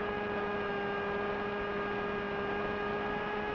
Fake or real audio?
real